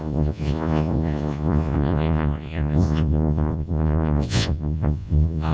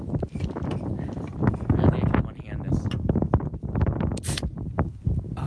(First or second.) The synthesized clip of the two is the first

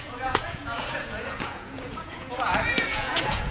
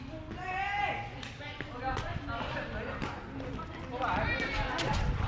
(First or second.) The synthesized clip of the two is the first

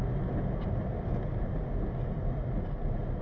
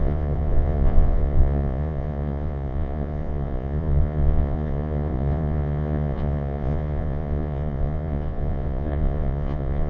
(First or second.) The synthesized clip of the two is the second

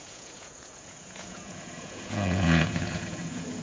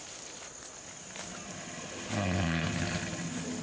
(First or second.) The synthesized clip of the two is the first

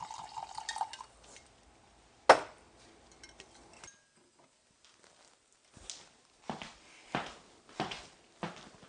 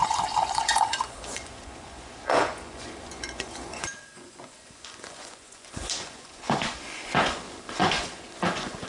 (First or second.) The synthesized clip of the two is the second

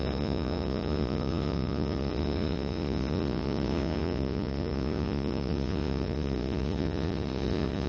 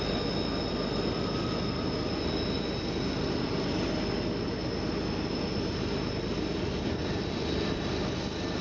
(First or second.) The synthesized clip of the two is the first